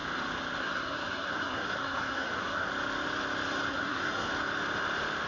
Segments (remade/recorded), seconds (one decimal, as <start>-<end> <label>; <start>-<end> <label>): 0.0-0.6 recorded; 0.6-2.7 remade; 2.7-3.7 recorded; 3.7-4.3 remade; 4.3-5.3 recorded